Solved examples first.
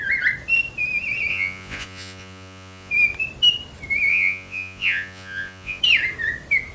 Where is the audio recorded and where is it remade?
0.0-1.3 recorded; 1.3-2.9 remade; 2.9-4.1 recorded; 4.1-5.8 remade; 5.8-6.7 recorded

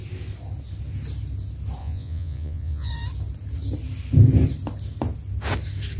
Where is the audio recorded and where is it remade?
0.0-1.8 recorded; 1.8-2.9 remade; 2.9-6.0 recorded